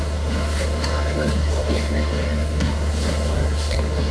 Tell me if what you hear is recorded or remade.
remade